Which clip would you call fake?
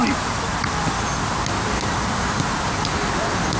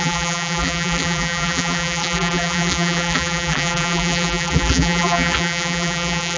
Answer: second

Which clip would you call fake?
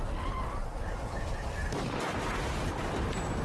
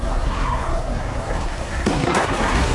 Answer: second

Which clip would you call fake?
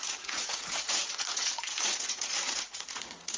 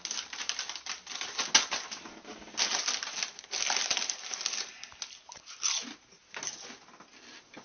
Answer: first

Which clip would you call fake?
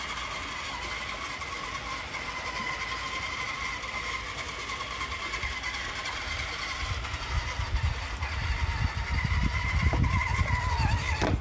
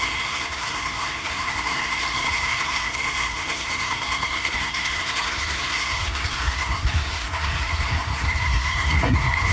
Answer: second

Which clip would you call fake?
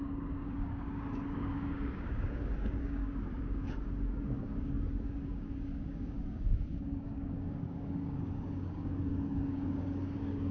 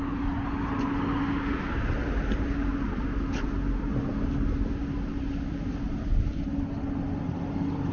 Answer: first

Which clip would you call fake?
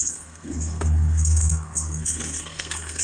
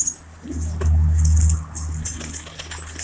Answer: first